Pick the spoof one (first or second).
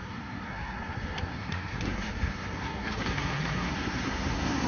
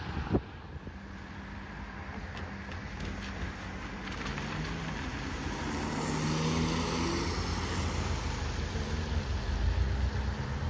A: first